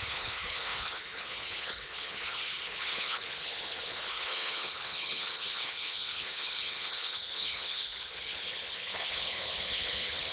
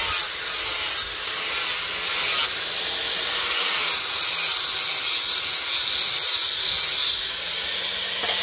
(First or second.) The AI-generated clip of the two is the first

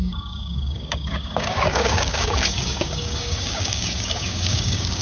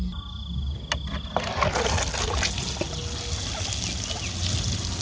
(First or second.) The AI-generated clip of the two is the first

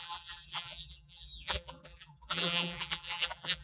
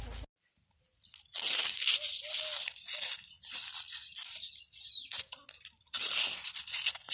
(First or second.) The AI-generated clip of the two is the first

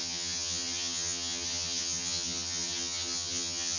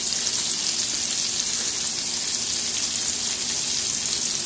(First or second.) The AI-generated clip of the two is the first